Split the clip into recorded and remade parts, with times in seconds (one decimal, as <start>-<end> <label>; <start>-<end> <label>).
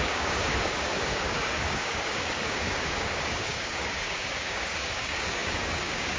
0.0-6.2 remade